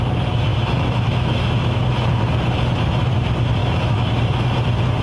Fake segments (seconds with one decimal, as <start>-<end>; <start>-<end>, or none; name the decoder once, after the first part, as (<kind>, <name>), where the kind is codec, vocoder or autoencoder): 0.5-1.9 (autoencoder, DAC-VAE); 3.6-4.2

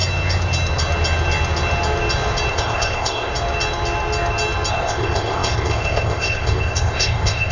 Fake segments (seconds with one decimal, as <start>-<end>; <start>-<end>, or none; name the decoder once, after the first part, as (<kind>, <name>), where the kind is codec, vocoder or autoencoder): 2.5-3.3 (codec, ZipCodec); 4.7-7.5

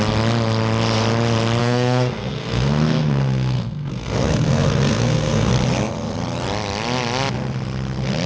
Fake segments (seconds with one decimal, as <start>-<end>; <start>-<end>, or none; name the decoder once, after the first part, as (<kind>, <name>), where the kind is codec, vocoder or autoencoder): 1.6-5.5 (codec, SNAC)

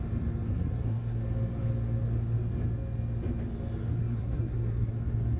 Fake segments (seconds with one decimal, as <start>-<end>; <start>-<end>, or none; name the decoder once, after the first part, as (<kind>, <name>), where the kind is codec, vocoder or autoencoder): 0.5-1.2 (codec, SNAC); 4.0-4.9

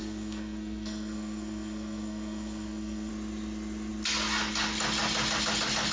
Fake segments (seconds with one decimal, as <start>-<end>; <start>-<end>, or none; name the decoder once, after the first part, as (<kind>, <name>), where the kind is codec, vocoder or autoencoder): 0.0-3.1 (codec, SNAC)

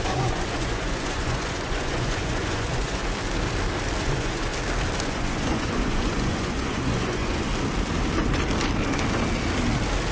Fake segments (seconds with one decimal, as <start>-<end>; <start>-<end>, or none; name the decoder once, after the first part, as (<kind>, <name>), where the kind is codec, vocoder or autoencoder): 0.0-3.0 (vocoder, Vocos); 4.0-4.5; 5.0-7.5

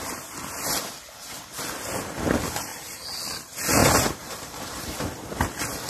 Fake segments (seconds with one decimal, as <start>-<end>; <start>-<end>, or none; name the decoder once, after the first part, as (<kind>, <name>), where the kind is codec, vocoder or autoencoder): 2.7-3.2 (vocoder, BigVGAN v2); 3.8-5.1

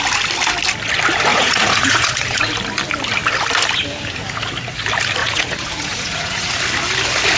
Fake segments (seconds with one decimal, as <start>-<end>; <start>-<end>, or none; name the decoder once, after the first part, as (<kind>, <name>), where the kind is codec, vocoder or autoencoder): 1.3-2.4 (vocoder, Vocos); 5.2-6.5